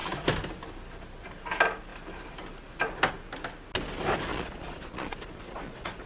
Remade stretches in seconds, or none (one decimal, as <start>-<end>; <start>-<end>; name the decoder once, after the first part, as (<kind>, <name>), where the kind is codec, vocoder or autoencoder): 4.3-6.1 (vocoder, Vocos)